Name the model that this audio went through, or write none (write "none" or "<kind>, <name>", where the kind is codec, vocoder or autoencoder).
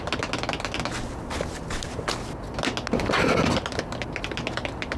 none